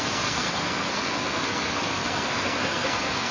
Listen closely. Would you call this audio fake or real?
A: fake